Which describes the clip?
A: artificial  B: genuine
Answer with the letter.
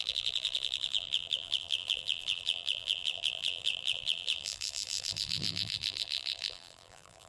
A